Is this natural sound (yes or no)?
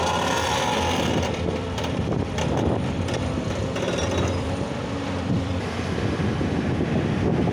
no